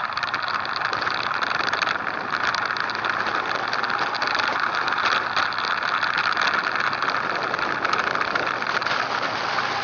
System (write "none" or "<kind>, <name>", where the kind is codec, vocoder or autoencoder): none